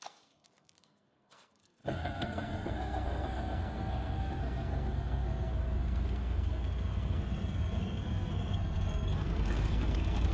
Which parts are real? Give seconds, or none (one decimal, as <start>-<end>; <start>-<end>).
none